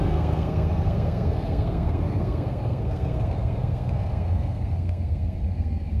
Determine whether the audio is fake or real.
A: fake